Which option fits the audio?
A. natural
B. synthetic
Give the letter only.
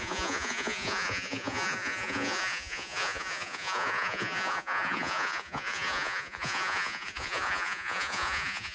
B